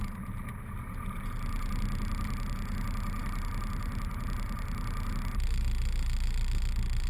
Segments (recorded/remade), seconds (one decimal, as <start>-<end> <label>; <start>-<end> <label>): 0.0-3.2 recorded; 3.2-5.1 remade; 5.1-7.1 recorded

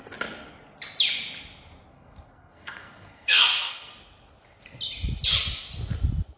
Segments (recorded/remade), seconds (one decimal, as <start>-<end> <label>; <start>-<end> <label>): 0.0-1.9 recorded; 1.9-3.9 remade; 3.9-6.4 recorded

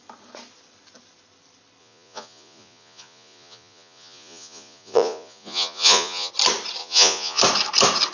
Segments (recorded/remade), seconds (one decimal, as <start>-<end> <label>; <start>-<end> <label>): 0.0-1.8 recorded; 1.8-6.3 remade; 6.3-6.8 recorded; 6.8-7.4 remade; 7.4-8.1 recorded

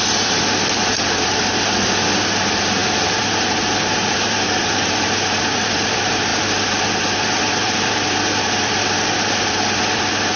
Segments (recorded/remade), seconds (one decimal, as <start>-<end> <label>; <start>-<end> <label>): 0.0-1.5 remade; 1.5-2.4 recorded; 2.4-10.4 remade

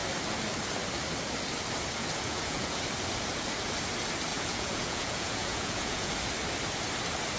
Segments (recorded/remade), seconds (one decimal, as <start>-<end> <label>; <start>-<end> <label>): 0.0-2.0 recorded; 2.0-2.8 remade; 2.8-4.3 recorded; 4.3-6.1 remade; 6.1-7.4 recorded